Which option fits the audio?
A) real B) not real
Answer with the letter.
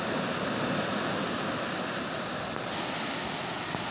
A